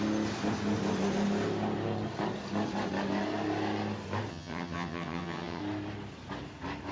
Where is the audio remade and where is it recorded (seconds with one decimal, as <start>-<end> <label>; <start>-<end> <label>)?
0.0-4.3 recorded; 4.3-5.6 remade; 5.6-6.9 recorded